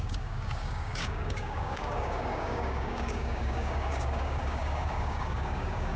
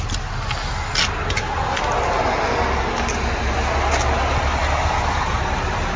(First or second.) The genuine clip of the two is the second